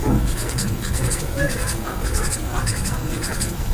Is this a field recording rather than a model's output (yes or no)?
no